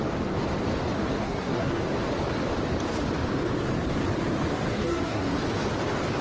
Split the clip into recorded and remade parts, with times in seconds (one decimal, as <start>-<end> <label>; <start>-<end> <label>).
0.0-1.2 recorded; 1.2-1.8 remade; 1.8-4.7 recorded; 4.7-5.4 remade; 5.4-6.2 recorded